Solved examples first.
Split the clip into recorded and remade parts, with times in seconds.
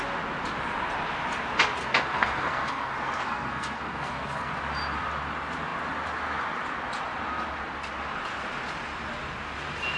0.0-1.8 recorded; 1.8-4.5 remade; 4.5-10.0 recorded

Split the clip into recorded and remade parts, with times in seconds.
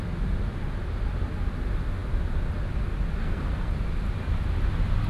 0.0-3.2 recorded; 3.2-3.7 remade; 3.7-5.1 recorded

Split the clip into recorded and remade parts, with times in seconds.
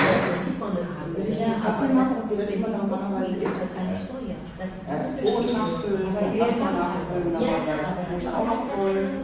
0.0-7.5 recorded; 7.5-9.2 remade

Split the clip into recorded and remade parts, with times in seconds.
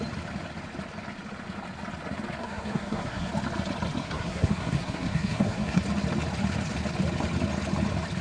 0.0-2.4 recorded; 2.4-3.3 remade; 3.3-4.0 recorded; 4.0-5.8 remade; 5.8-8.2 recorded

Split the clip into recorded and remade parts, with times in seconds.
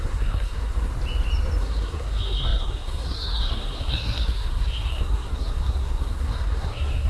0.0-0.9 remade; 0.9-1.6 recorded; 1.6-7.1 remade